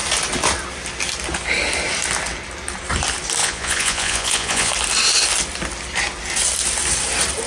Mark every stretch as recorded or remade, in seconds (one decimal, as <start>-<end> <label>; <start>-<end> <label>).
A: 0.0-3.4 recorded; 3.4-4.7 remade; 4.7-7.5 recorded